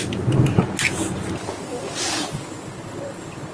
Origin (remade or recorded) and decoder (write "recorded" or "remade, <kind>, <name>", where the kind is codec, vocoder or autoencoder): recorded